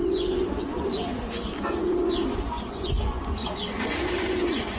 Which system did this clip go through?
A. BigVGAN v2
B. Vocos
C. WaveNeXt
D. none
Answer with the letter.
B